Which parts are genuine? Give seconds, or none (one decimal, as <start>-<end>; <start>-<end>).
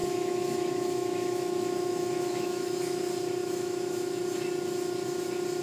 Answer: 3.0-3.4; 4.2-5.6